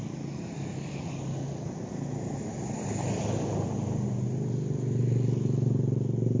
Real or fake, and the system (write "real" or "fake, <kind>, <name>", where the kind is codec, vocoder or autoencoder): real